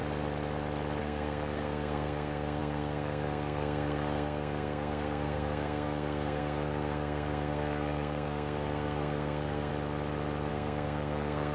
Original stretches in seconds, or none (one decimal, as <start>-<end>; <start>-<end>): 0.0-1.0; 9.7-10.5